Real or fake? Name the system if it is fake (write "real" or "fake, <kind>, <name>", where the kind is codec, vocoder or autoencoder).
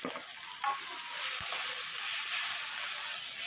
real